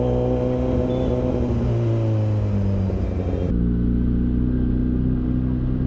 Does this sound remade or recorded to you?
recorded